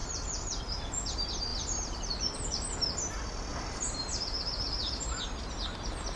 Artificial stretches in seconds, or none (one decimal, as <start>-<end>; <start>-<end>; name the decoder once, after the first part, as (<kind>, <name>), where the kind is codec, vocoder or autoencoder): 1.5-2.1 (vocoder, BigVGAN v2); 3.5-4.2